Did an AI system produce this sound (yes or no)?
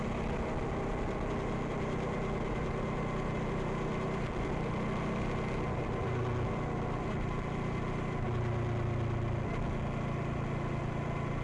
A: no